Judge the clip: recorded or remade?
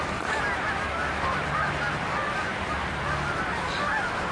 recorded